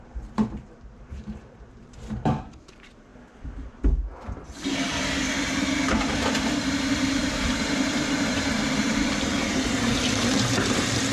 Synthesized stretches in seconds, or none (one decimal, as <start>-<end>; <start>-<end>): 0.0-3.1; 6.5-11.1